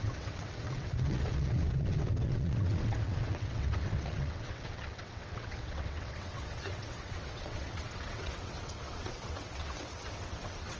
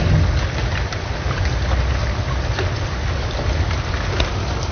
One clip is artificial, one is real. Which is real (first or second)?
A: second